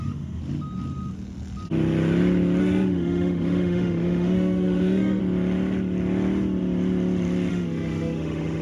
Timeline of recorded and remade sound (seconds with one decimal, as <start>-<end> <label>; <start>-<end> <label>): 0.0-0.4 remade; 0.4-2.6 recorded; 2.6-5.2 remade; 5.2-7.5 recorded; 7.5-8.6 remade